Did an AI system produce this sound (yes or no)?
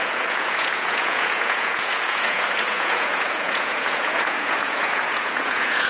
yes